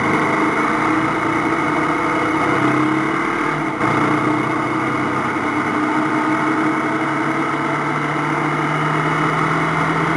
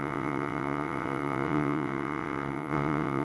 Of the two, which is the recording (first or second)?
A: first